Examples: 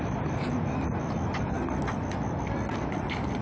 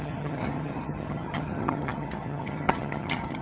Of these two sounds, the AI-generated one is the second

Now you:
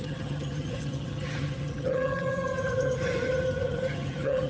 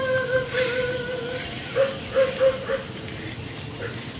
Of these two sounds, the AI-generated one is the first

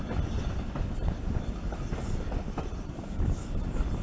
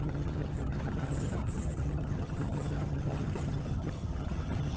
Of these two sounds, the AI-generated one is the second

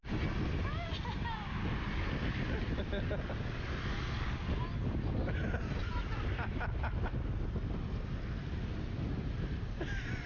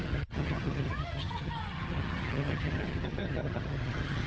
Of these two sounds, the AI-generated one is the second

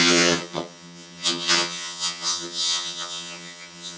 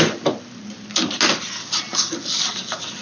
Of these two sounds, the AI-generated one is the first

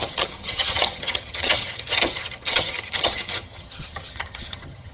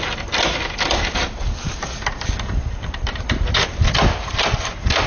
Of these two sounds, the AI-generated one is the first